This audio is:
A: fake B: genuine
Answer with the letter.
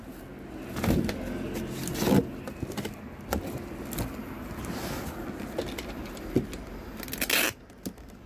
B